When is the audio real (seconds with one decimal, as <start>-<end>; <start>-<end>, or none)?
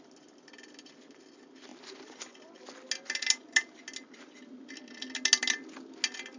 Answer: 0.0-6.4